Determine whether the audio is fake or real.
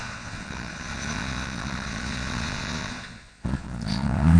fake